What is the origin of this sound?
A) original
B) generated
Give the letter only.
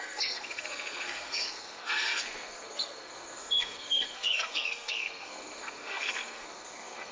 B